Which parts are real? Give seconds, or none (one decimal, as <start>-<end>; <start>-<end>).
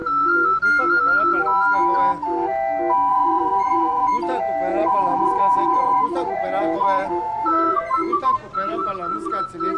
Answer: 0.0-3.1; 4.1-4.7; 9.4-9.8